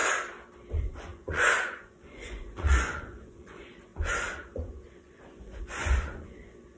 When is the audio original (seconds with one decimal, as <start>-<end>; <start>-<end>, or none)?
0.0-0.7